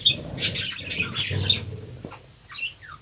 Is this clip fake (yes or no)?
no